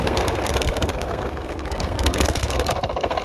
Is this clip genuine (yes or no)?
no